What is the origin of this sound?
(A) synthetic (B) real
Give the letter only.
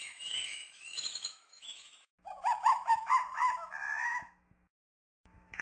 A